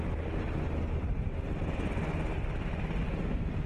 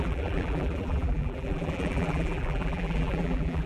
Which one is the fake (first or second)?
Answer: second